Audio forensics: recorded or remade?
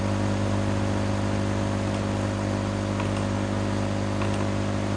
recorded